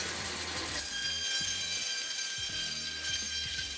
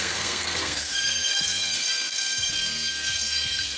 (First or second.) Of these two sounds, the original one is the first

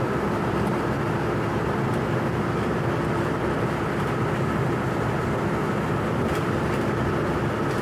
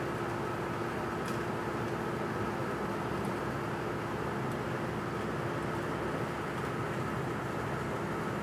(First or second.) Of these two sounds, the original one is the second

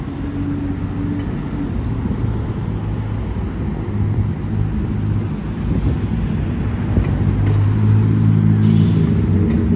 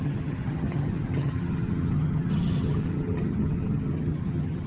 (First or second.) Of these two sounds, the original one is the first